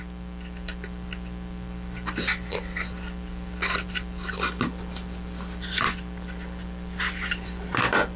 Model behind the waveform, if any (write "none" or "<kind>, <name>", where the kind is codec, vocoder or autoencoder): none